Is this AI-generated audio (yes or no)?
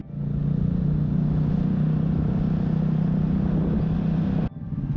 no